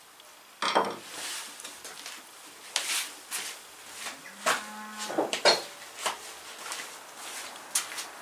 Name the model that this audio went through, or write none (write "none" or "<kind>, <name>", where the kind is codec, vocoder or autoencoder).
none